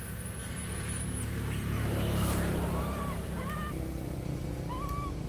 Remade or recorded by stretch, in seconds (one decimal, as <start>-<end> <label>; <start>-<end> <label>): 0.0-5.3 recorded